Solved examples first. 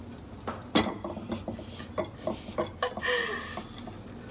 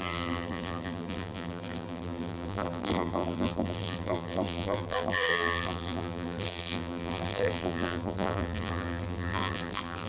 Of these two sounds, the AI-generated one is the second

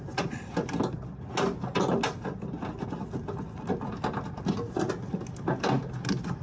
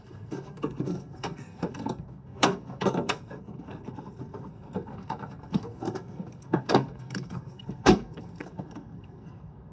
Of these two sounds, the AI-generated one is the second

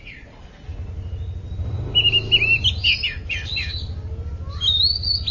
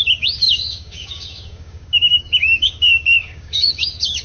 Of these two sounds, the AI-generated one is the second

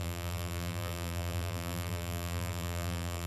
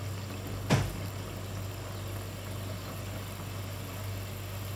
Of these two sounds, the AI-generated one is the first